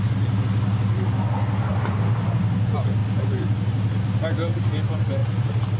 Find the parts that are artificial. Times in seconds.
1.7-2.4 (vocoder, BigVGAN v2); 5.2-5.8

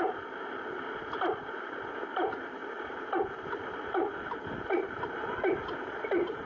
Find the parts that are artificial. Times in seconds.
none

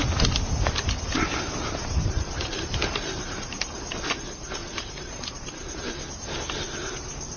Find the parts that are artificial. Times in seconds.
1.8-3.6 (vocoder, BigVGAN v2); 4.6-5.9

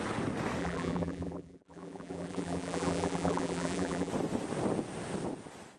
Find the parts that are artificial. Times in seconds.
0.6-4.1 (vocoder, BigVGAN v2)

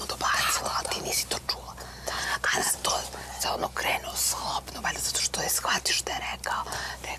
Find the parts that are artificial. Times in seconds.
0.0-2.9 (vocoder, BigVGAN v2); 4.2-4.8